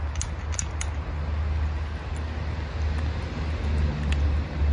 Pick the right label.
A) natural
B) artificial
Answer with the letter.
A